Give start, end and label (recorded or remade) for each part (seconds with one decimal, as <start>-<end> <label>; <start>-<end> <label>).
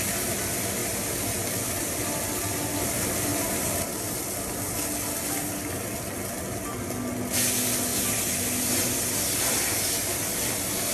0.0-10.9 recorded